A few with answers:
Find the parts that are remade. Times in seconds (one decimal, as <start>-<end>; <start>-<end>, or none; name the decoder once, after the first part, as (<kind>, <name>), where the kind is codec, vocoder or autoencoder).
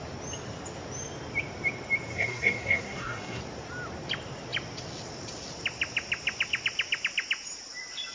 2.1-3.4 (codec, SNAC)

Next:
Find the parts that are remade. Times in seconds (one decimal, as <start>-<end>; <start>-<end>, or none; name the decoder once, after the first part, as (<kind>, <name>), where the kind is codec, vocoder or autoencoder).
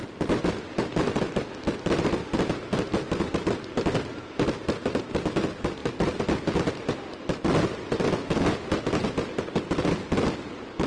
none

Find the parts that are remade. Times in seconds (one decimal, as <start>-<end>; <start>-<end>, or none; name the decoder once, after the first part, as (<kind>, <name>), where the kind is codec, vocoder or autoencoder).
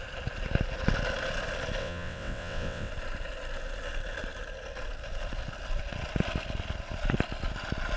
1.8-2.9 (vocoder, WaveNeXt)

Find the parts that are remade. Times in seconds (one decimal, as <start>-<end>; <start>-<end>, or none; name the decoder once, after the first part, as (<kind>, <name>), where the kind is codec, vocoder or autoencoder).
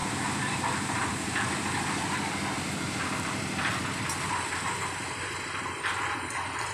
0.0-4.0 (vocoder, BigVGAN v2)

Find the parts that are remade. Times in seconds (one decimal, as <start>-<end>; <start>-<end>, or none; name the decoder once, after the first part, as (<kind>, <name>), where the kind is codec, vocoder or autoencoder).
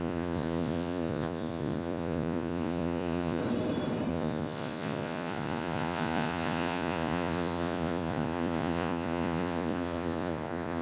0.0-3.4 (vocoder, Vocos); 4.1-10.8